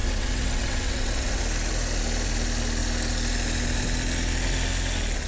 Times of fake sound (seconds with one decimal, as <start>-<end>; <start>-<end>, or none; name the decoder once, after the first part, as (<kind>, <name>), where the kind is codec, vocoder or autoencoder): 0.0-1.4 (vocoder, WaveNeXt)